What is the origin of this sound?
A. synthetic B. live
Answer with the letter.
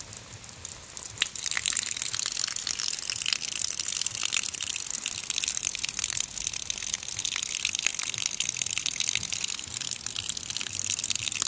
B